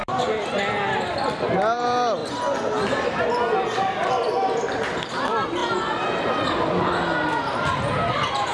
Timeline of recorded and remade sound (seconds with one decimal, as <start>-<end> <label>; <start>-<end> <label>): 0.0-2.2 remade; 2.2-4.1 recorded; 4.1-5.6 remade; 5.6-6.2 recorded; 6.2-8.5 remade